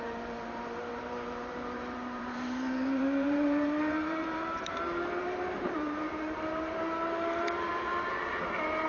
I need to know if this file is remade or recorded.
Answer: remade